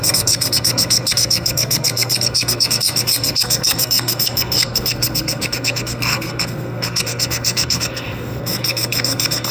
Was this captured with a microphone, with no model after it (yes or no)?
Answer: no